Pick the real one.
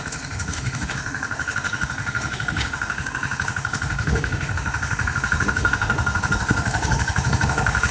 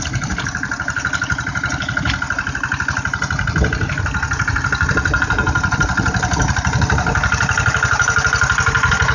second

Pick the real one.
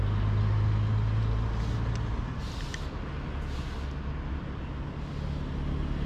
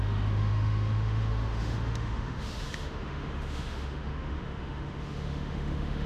first